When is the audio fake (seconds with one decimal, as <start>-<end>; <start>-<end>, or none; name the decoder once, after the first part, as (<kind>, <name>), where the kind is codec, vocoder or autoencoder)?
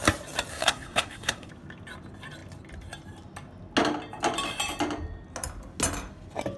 0.5-1.5 (codec, SNAC)